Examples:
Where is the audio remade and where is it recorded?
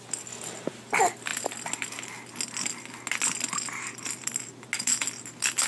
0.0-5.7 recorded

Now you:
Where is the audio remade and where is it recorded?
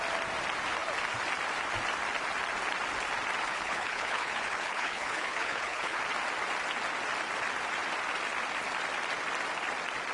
0.0-3.5 recorded; 3.5-6.0 remade; 6.0-10.1 recorded